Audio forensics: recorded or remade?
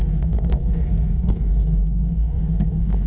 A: remade